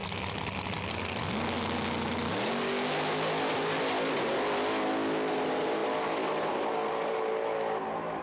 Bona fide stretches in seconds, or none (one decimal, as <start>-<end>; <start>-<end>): 0.0-8.2